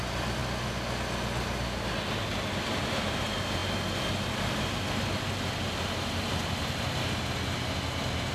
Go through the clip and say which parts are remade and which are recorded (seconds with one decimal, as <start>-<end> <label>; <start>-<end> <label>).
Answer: 0.0-8.3 recorded